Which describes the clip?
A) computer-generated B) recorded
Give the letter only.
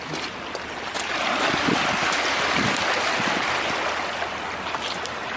B